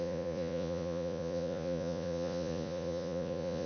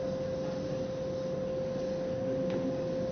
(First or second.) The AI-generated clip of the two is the first